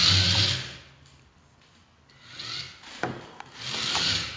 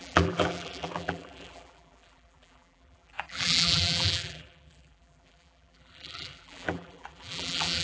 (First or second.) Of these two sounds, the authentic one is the first